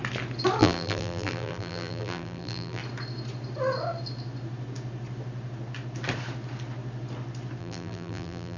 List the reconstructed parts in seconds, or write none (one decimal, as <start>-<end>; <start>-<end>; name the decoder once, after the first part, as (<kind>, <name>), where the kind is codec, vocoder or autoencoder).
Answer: 0.6-2.8 (vocoder, BigVGAN v2); 7.6-8.6